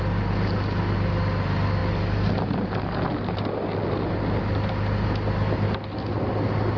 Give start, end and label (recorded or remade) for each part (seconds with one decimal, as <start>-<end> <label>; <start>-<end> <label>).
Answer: 0.0-6.8 recorded